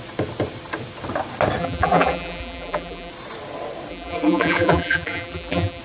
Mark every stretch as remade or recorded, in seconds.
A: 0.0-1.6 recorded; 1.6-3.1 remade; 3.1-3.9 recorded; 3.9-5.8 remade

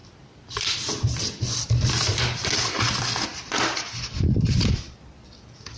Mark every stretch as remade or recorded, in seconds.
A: 0.0-2.2 remade; 2.2-3.3 recorded; 3.3-3.8 remade; 3.8-5.8 recorded

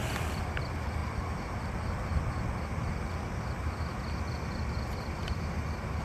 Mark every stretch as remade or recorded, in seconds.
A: 0.0-0.6 remade; 0.6-6.0 recorded

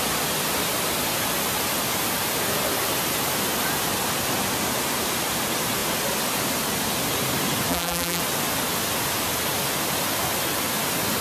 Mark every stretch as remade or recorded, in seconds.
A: 0.0-7.7 recorded; 7.7-8.2 remade; 8.2-11.2 recorded